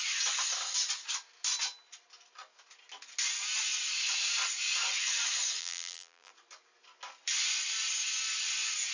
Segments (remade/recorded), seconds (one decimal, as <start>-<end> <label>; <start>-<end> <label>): 0.0-5.6 recorded; 5.6-6.3 remade; 6.3-8.9 recorded